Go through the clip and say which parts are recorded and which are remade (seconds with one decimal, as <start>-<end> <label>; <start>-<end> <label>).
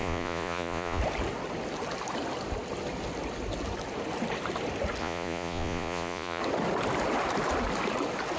0.0-1.0 remade; 1.0-5.0 recorded; 5.0-6.4 remade; 6.4-8.4 recorded